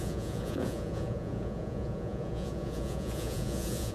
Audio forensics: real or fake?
fake